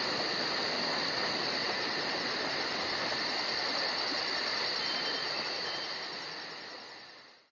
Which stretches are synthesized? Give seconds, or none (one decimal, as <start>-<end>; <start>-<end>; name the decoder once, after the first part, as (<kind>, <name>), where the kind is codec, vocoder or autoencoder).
5.2-6.0 (vocoder, Vocos)